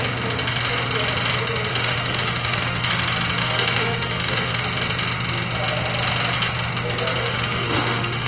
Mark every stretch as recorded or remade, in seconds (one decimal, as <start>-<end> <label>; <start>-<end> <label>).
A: 0.0-1.7 recorded; 1.7-2.9 remade; 2.9-3.4 recorded; 3.4-4.6 remade; 4.6-7.2 recorded; 7.2-8.3 remade

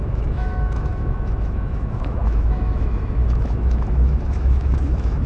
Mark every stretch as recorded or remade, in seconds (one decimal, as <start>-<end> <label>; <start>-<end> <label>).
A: 0.0-5.3 remade